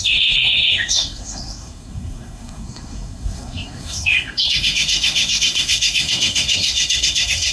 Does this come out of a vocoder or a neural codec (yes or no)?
yes